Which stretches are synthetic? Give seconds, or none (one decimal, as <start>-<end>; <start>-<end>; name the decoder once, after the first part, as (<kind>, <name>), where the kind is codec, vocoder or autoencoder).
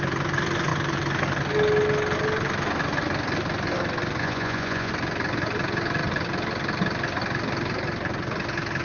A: 4.2-4.9 (vocoder, Vocos)